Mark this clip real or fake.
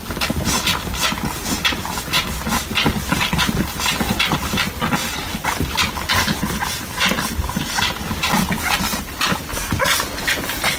real